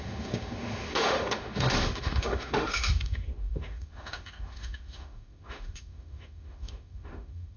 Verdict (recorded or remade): remade